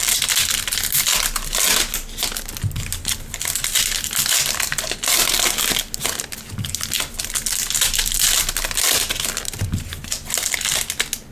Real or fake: real